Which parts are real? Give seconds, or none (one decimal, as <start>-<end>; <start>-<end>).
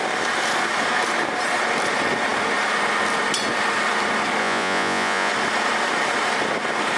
0.0-4.4; 5.3-7.0